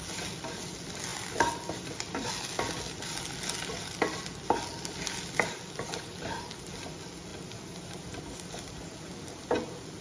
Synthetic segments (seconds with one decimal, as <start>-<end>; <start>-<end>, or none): none